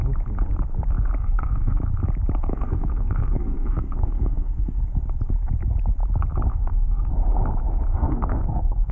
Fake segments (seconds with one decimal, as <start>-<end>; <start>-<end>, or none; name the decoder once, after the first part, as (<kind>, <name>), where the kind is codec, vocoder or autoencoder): 1.2-1.8 (codec, SNAC); 2.5-4.8; 6.5-7.1; 7.9-8.9